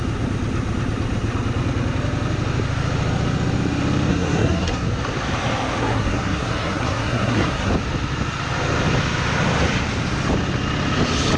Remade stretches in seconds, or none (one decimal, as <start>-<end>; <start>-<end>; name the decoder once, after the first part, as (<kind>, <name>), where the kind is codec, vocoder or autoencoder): 4.1-4.9 (codec, SNAC); 5.8-7.7